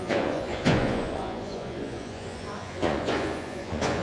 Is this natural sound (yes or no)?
no